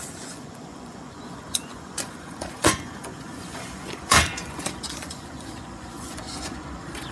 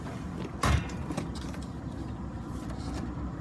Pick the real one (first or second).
second